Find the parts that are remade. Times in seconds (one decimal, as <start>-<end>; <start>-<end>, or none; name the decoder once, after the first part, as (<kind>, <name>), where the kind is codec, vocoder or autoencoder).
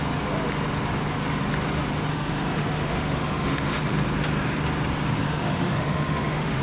2.1-3.8 (autoencoder, DAC-VAE); 5.2-6.6